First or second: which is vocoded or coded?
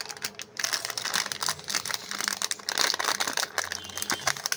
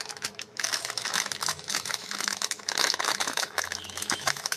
second